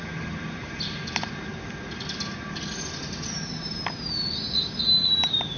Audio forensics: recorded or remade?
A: recorded